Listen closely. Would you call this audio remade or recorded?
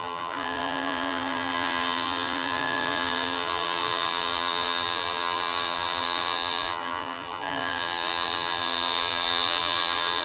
remade